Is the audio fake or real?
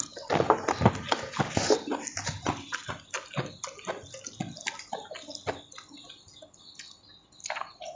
real